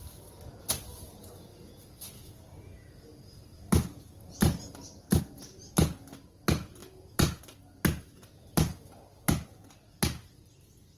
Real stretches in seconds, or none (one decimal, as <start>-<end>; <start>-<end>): 0.0-11.0